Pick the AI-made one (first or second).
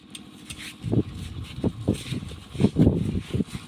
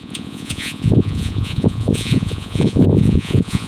second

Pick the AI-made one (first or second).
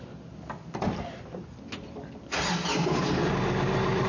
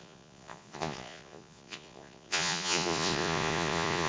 second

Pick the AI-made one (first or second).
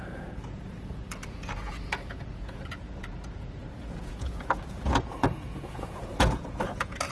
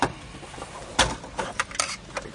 first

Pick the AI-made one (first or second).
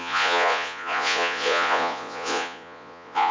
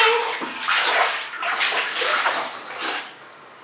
first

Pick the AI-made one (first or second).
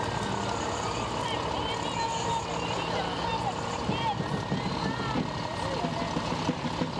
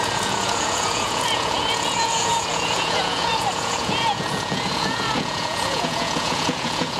second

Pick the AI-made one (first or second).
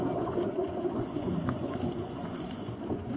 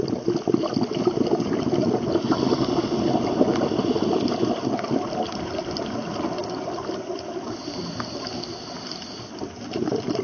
first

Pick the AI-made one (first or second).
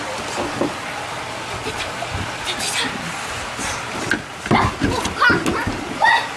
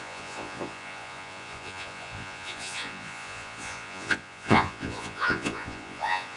second